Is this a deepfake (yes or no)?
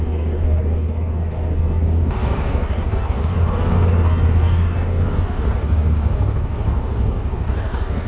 yes